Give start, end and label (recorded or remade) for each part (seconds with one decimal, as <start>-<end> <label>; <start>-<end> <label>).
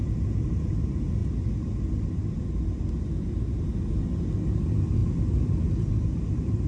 0.0-6.7 recorded